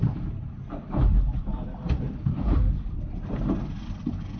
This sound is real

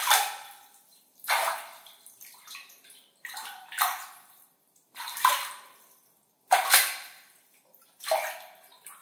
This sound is fake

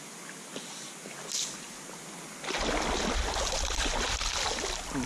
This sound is real